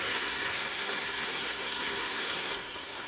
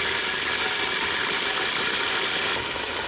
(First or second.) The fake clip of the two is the first